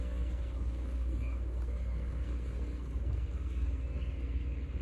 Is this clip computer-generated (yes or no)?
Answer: yes